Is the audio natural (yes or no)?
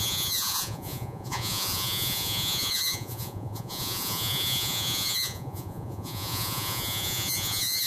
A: no